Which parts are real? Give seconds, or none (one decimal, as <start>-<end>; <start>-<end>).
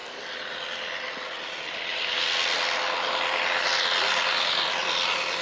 0.0-5.4